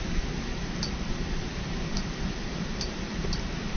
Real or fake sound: fake